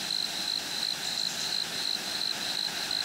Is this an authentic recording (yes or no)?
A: yes